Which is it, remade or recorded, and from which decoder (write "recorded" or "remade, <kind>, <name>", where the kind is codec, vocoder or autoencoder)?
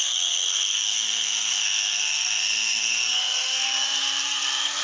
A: remade, codec, SNAC